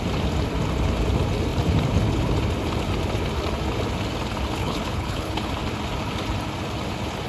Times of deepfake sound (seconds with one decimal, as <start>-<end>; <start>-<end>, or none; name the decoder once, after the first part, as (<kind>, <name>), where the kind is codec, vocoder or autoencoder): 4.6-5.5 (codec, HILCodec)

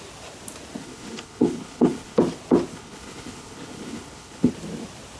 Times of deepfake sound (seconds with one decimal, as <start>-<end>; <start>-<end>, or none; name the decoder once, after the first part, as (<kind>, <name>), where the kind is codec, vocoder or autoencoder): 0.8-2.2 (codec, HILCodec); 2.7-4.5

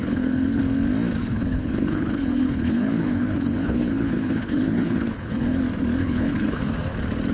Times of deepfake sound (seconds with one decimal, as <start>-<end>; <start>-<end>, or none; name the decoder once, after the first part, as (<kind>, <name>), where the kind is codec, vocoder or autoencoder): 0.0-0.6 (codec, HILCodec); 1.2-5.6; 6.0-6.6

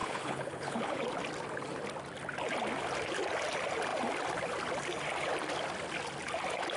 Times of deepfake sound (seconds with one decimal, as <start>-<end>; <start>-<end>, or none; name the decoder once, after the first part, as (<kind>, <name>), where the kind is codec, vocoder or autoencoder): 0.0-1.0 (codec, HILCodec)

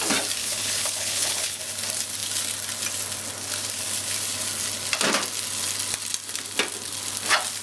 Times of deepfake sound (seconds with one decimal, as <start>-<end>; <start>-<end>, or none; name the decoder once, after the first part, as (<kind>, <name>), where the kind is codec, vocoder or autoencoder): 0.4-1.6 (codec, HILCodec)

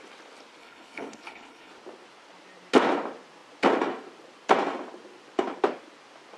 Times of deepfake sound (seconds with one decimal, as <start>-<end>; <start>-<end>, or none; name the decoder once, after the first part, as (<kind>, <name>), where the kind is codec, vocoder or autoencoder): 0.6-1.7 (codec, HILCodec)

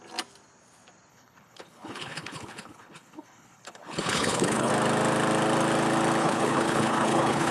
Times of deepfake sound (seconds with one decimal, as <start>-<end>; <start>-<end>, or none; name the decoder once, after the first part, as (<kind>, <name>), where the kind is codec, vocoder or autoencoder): 1.1-4.7 (codec, HILCodec); 6.2-7.5